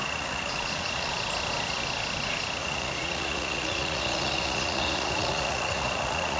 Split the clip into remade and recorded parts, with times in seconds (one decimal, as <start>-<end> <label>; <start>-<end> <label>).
0.0-1.1 remade; 1.1-2.6 recorded; 2.6-6.4 remade